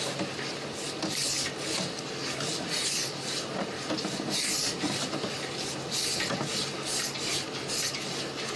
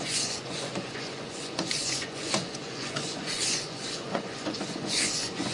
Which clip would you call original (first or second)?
first